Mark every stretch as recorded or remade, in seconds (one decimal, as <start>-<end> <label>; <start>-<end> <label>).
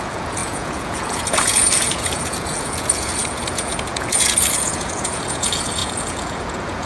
0.0-6.9 remade